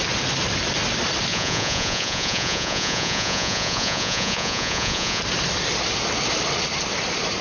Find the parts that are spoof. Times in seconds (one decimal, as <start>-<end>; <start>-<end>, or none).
1.3-5.2